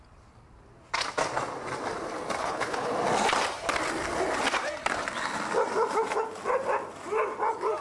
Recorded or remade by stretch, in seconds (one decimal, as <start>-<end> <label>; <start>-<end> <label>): 0.0-2.4 recorded; 2.4-2.9 remade; 2.9-7.8 recorded